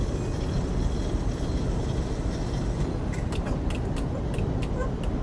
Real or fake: real